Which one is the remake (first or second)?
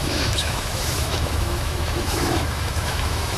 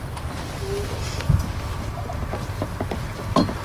first